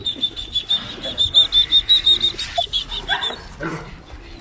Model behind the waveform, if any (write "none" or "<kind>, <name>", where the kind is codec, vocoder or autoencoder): none